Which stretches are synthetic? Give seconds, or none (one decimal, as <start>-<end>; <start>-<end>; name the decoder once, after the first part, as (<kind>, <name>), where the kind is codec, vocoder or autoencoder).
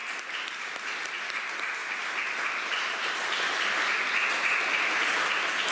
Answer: none